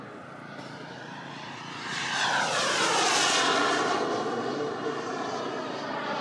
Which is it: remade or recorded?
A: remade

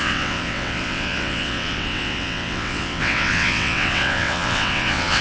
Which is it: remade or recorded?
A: remade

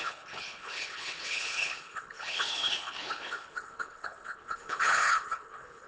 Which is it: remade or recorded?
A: remade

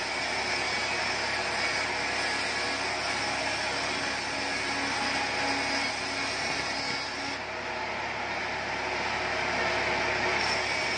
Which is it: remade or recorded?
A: recorded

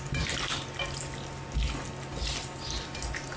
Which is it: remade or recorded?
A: recorded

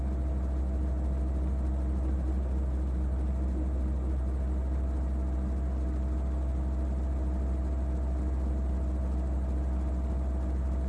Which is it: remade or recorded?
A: recorded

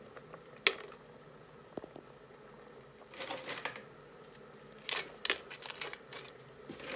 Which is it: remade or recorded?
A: recorded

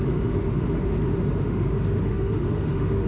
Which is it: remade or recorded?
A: remade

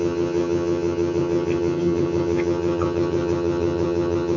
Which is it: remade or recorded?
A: remade